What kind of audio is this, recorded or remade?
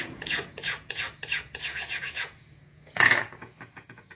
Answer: remade